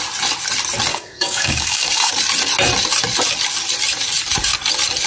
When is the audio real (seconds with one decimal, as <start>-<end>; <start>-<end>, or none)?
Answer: 0.0-0.9; 2.1-5.1